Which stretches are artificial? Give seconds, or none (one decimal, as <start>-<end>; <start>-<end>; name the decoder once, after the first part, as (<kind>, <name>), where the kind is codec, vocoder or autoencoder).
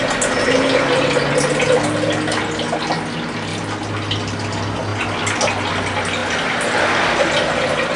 none